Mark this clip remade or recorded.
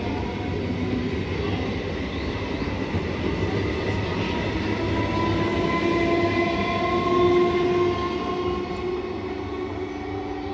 recorded